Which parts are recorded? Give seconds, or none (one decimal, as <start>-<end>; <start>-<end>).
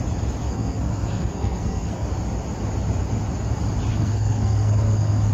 0.0-0.4; 2.1-3.9